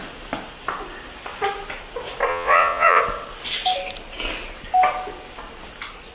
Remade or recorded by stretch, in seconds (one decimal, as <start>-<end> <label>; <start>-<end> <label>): 0.0-2.3 recorded; 2.3-3.0 remade; 3.0-6.1 recorded